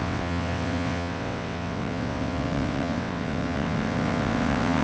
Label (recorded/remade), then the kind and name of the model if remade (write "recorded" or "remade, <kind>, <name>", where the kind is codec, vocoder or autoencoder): remade, vocoder, WaveNeXt